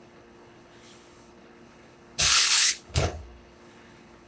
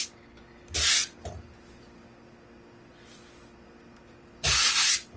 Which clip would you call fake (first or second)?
first